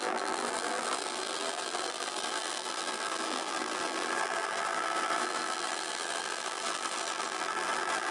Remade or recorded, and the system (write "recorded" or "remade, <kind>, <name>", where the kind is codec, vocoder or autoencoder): remade, vocoder, BigVGAN v2